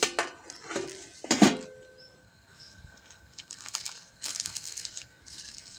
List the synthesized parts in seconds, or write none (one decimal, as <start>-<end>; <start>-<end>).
2.2-5.8